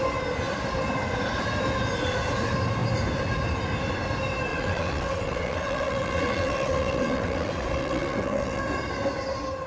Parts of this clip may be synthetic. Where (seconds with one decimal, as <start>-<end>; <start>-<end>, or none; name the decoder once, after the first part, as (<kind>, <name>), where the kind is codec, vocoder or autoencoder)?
4.5-8.6 (vocoder, WaveNeXt)